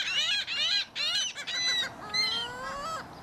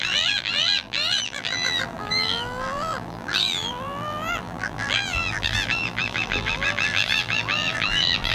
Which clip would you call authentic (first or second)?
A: first